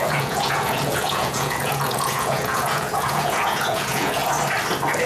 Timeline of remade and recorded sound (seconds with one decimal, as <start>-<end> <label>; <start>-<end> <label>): 0.0-4.2 remade; 4.2-5.1 recorded